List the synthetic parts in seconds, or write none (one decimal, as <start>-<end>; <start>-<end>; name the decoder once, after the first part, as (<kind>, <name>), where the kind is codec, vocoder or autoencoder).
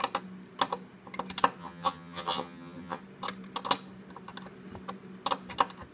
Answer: 1.6-3.0 (vocoder, HiFi-GAN)